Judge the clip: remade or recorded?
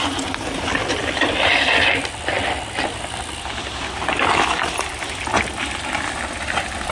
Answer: recorded